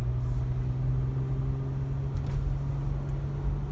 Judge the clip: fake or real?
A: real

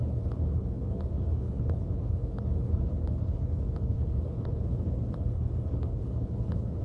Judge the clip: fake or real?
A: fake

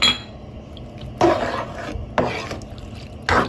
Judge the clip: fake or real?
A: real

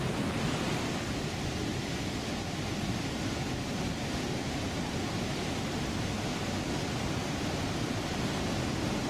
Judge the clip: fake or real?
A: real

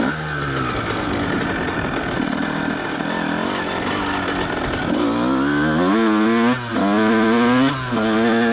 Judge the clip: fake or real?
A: real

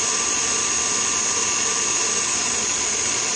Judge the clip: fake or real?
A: real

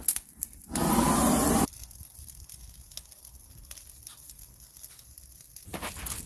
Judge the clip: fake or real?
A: real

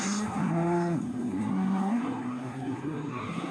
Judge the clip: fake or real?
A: fake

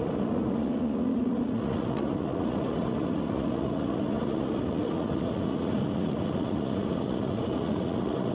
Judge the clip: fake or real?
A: fake